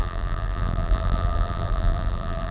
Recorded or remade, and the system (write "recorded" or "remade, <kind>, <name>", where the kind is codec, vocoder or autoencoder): remade, vocoder, BigVGAN v2